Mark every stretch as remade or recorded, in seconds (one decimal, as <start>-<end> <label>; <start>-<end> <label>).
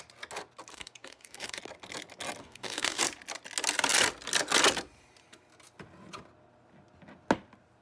0.0-0.7 recorded; 0.7-1.6 remade; 1.6-2.4 recorded; 2.4-3.0 remade; 3.0-7.8 recorded